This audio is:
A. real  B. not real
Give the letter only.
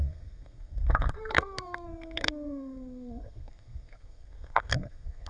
B